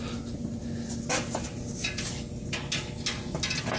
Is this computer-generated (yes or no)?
no